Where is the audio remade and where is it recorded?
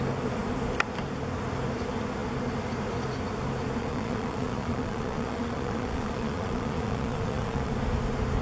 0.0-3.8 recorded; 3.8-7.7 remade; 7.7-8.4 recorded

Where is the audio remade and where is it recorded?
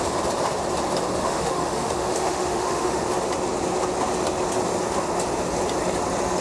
0.0-1.2 recorded; 1.2-3.0 remade; 3.0-6.4 recorded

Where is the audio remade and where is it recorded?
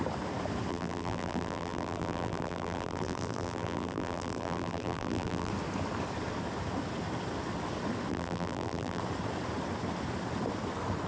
0.0-0.7 recorded; 0.7-5.5 remade; 5.5-8.1 recorded; 8.1-9.0 remade; 9.0-11.1 recorded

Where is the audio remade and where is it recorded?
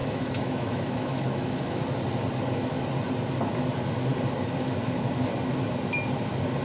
0.0-1.8 remade; 1.8-6.6 recorded